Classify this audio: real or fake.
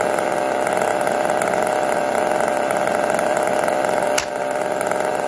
real